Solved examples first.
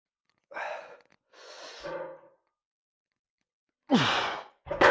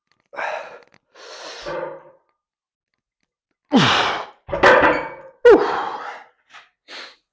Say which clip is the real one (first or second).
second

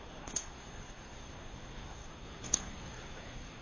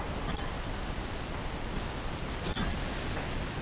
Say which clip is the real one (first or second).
second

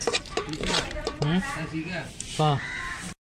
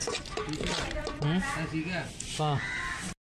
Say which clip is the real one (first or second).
second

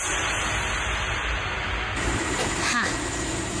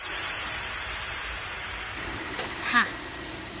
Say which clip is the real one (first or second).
first